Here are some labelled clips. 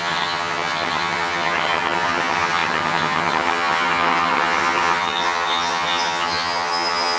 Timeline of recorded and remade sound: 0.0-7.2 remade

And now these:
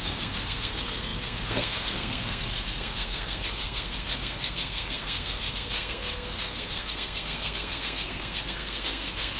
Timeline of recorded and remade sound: 0.0-9.4 remade

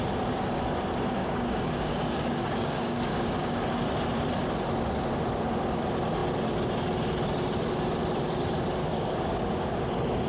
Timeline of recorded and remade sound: 0.0-1.2 recorded; 1.2-3.6 remade; 3.6-8.8 recorded; 8.8-9.8 remade; 9.8-10.3 recorded

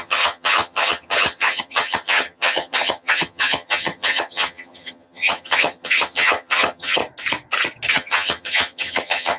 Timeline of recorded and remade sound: 0.0-7.0 remade; 7.0-7.9 recorded; 7.9-9.4 remade

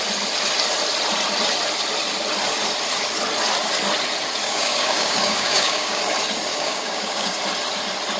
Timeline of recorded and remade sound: 0.0-4.4 recorded; 4.4-6.0 remade; 6.0-6.5 recorded; 6.5-7.4 remade; 7.4-8.2 recorded

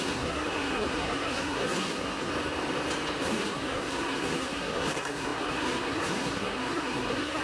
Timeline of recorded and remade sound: 0.0-2.3 remade; 2.3-3.2 recorded; 3.2-7.4 remade

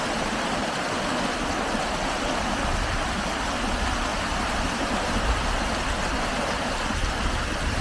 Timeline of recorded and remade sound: 0.0-4.1 recorded; 4.1-5.7 remade; 5.7-6.3 recorded; 6.3-6.8 remade; 6.8-7.8 recorded